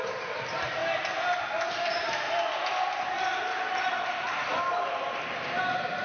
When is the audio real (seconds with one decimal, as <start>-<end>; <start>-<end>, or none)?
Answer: 0.0-6.0